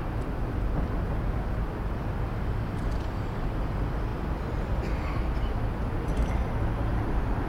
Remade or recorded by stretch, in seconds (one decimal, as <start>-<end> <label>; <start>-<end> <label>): 0.0-7.5 recorded

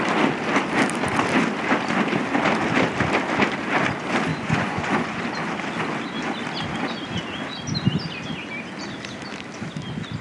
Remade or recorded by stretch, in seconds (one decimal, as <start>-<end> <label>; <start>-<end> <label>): 0.0-4.3 recorded; 4.3-5.2 remade; 5.2-10.2 recorded